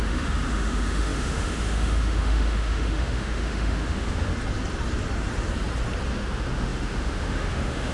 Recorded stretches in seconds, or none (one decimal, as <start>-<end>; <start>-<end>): 4.3-6.1

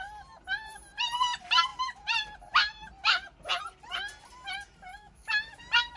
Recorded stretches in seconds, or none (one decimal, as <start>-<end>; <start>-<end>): 0.0-4.9; 5.6-6.0